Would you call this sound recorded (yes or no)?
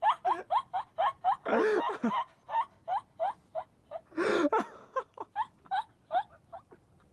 yes